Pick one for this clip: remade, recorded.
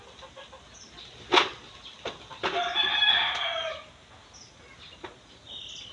recorded